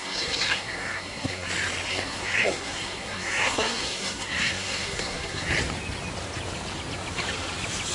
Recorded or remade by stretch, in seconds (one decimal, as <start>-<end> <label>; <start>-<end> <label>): 0.0-1.5 remade; 1.5-1.9 recorded; 1.9-5.5 remade; 5.5-7.9 recorded